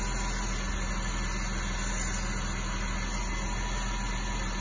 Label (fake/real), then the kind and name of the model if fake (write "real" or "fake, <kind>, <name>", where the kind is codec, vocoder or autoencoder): real